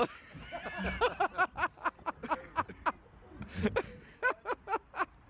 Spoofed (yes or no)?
no